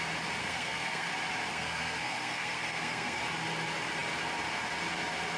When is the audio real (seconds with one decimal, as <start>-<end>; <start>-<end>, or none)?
0.0-0.4; 1.1-1.5; 3.2-5.4